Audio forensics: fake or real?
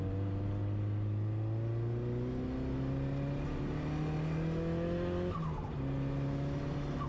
real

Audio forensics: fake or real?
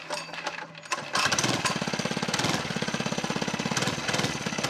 real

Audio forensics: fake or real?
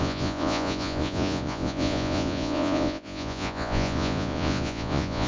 fake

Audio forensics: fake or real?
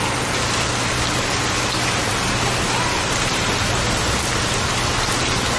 real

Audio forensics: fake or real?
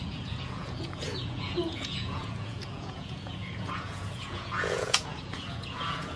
fake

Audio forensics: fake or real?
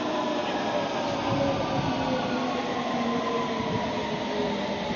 real